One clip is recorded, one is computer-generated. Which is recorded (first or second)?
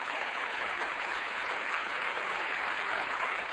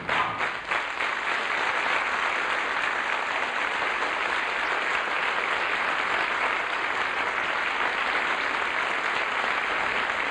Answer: second